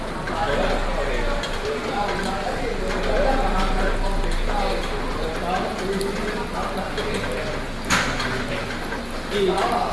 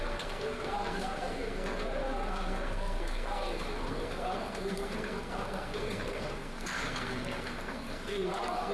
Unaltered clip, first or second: first